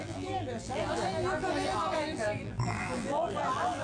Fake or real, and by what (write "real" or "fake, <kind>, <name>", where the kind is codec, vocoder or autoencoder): fake, vocoder, BigVGAN v2